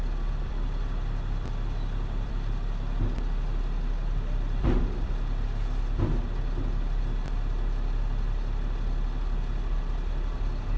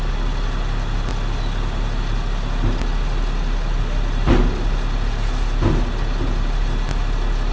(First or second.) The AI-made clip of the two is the first